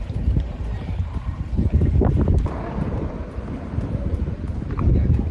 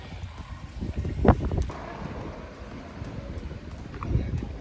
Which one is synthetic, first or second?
first